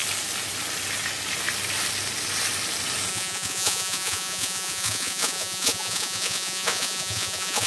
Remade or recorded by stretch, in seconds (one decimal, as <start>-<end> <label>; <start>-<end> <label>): 0.0-3.1 recorded; 3.1-7.7 remade